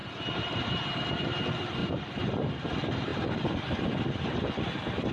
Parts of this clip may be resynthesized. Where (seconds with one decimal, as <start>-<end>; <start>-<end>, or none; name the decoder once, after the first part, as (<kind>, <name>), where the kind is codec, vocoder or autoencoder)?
0.0-1.3 (vocoder, BigVGAN v2); 1.8-2.3; 3.1-3.7

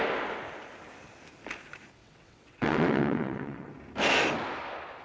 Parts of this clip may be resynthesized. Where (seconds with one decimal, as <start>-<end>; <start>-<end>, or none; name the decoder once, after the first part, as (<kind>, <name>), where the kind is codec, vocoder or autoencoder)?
2.0-3.7 (vocoder, WaveNeXt)

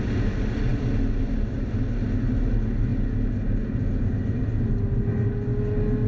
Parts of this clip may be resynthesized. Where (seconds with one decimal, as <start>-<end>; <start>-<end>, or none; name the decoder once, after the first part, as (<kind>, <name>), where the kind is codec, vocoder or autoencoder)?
none